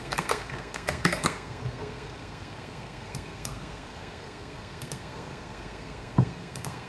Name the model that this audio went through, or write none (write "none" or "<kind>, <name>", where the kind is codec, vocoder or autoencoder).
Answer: codec, SNAC